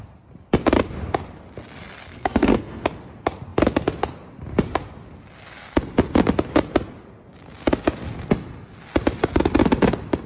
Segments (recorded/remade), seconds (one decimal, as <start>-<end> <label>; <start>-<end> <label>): 0.0-2.1 recorded; 2.1-2.8 remade; 2.8-10.3 recorded